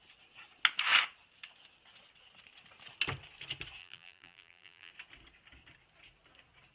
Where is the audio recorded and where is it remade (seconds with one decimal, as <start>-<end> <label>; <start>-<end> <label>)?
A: 0.0-3.8 recorded; 3.8-4.9 remade; 4.9-6.7 recorded